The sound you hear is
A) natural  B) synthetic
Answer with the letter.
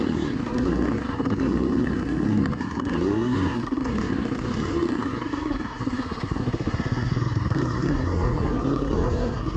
B